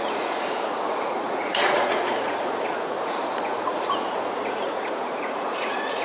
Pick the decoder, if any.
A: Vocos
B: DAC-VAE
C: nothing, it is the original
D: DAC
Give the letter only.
A